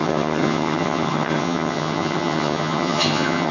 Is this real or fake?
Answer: fake